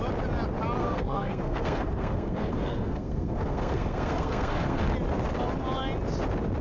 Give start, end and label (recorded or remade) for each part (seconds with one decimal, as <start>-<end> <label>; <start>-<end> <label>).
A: 0.0-0.8 recorded; 0.8-4.8 remade; 4.8-6.6 recorded